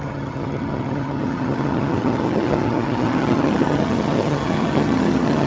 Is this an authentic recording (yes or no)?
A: no